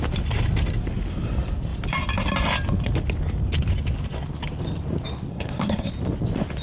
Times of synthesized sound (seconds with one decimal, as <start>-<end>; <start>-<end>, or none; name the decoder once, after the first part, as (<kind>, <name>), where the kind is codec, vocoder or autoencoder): 5.3-5.9 (codec, SNAC)